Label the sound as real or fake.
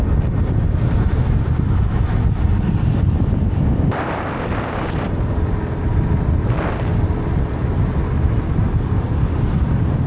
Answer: real